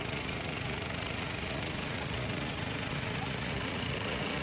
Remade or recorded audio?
remade